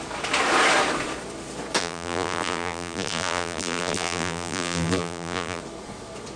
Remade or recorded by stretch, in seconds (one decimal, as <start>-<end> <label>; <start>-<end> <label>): 0.0-1.8 recorded; 1.8-5.6 remade; 5.6-6.4 recorded